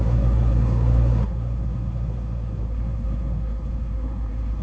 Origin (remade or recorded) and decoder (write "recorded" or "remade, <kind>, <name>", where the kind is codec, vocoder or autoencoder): remade, codec, SNAC